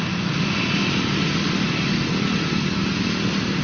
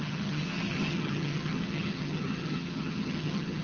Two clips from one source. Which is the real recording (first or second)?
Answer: first